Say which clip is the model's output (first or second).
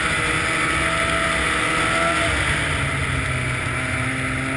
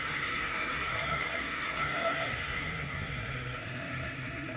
second